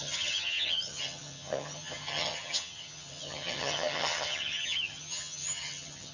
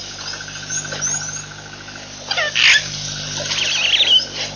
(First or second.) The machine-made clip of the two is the first